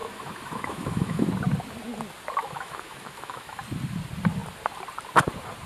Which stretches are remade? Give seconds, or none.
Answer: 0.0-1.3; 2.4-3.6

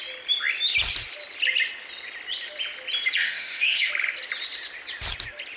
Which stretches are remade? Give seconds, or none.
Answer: 3.2-3.9

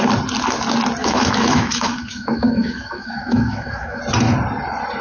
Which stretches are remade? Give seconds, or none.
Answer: 1.0-4.0

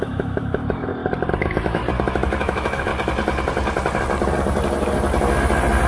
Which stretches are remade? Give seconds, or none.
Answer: 0.0-0.9; 1.4-1.8; 2.4-2.9